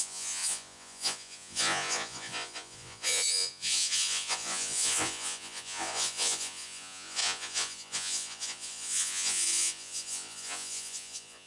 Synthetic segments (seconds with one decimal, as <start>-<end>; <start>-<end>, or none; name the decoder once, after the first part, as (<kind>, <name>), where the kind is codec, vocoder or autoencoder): 0.0-11.5 (vocoder, Vocos)